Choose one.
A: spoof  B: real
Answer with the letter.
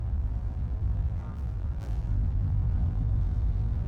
A